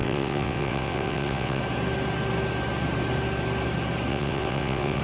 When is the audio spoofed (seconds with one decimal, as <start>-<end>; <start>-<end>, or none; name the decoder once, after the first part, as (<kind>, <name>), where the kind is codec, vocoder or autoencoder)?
0.0-1.6 (vocoder, WaveNeXt); 4.1-5.0